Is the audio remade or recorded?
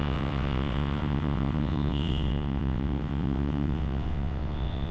remade